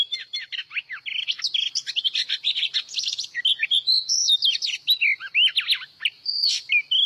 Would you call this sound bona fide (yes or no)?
yes